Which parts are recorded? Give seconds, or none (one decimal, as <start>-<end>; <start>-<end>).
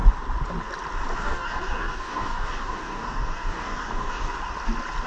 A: 0.0-1.2; 4.3-5.1